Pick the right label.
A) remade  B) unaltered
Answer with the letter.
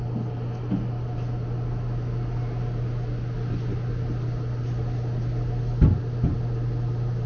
B